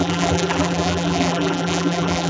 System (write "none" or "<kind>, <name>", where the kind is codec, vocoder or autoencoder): vocoder, BigVGAN v2